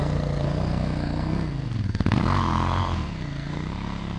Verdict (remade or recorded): remade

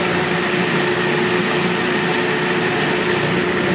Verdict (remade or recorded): recorded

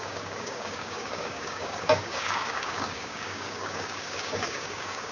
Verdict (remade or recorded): remade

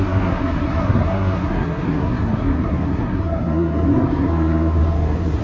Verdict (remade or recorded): remade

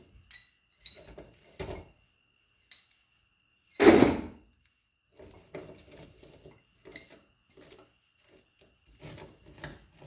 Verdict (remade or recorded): recorded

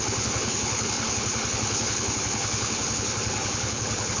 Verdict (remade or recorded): remade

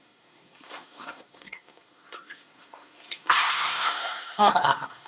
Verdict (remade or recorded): remade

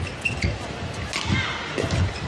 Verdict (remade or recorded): recorded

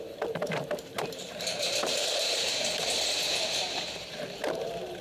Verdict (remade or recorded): remade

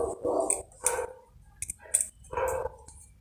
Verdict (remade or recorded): recorded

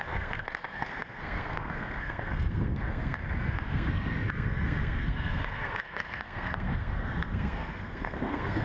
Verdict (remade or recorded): remade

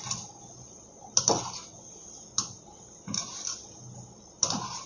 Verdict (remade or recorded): recorded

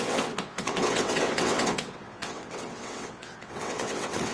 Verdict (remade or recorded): remade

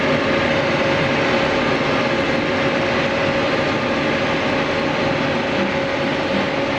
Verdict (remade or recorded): recorded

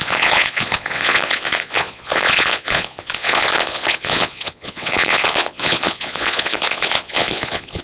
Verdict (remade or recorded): remade